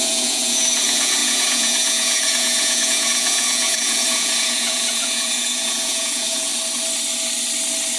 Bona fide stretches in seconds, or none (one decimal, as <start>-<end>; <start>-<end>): 6.5-8.0

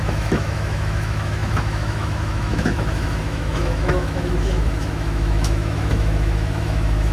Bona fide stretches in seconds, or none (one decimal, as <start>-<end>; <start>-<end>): none